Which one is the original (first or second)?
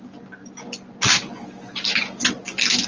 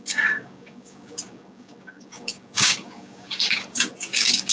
first